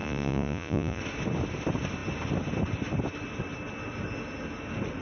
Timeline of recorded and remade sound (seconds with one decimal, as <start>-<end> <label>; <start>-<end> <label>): 0.0-1.0 remade; 1.0-5.0 recorded